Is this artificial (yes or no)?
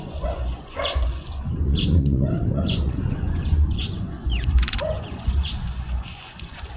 yes